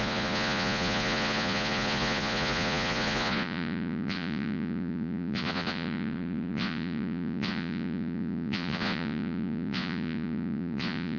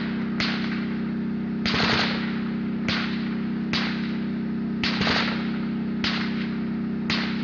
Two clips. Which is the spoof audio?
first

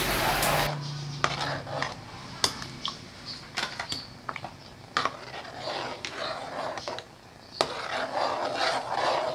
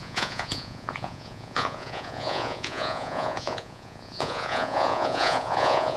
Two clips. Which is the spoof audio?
second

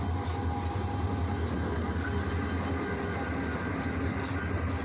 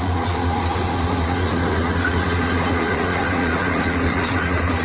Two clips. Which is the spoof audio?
second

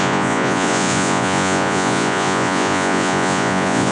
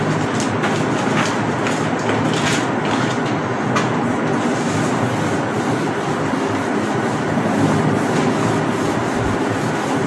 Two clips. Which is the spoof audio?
first